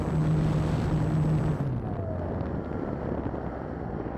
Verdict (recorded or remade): recorded